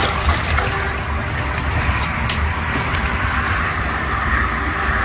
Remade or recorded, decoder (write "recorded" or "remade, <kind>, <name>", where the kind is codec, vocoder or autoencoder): recorded